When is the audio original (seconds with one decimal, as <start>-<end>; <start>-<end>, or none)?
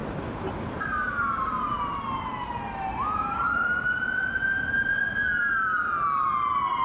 0.9-5.0